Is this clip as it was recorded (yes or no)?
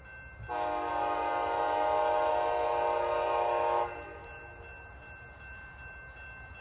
yes